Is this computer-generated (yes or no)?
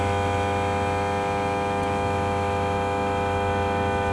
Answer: yes